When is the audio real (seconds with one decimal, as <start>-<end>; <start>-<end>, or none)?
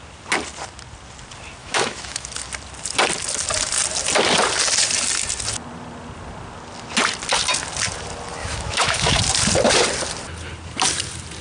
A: 0.0-1.6; 2.3-8.4; 9.2-11.4